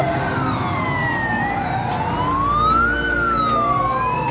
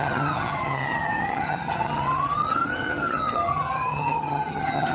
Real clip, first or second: first